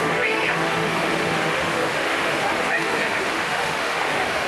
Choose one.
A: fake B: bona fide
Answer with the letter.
A